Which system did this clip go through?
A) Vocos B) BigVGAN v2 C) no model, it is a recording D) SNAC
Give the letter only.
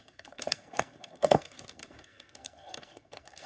D